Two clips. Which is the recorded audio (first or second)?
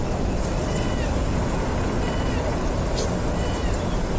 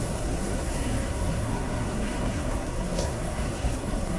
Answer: first